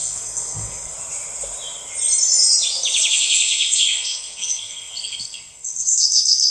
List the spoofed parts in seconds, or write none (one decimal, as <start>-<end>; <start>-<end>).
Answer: 0.0-0.9; 3.1-6.5